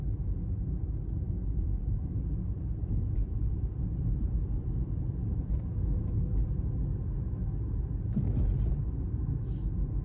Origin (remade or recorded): recorded